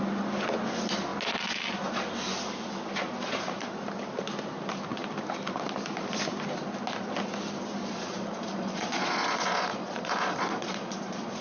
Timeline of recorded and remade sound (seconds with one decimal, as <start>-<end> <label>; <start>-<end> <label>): 0.0-7.8 recorded; 7.8-11.4 remade